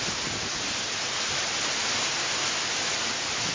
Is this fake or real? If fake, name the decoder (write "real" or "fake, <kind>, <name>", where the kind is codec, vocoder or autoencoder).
real